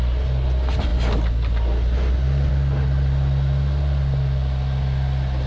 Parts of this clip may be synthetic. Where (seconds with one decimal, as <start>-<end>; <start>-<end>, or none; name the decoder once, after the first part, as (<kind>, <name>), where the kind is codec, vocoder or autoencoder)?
none